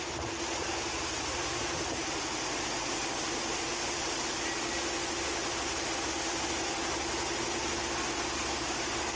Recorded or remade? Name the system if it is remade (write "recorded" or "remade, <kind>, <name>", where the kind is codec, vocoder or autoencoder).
recorded